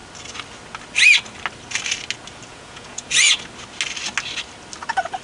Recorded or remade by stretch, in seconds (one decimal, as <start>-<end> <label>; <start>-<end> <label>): 0.0-2.5 recorded; 2.5-3.4 remade; 3.4-5.2 recorded